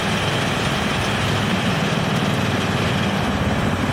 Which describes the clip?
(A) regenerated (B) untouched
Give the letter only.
B